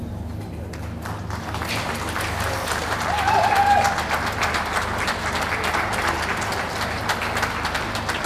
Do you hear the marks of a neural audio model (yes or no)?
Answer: no